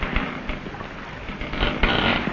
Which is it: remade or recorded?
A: recorded